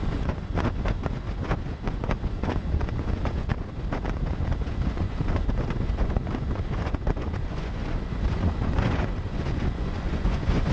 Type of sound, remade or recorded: remade